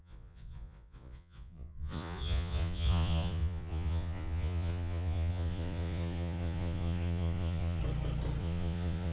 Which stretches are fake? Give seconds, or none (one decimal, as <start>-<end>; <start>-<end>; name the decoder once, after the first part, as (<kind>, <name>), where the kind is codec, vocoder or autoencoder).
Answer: 0.0-7.8 (vocoder, Vocos); 8.4-9.1